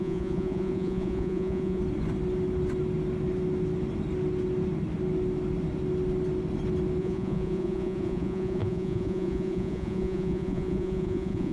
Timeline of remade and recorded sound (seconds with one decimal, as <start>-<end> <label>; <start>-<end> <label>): 0.0-1.8 remade; 1.8-7.0 recorded; 7.0-11.5 remade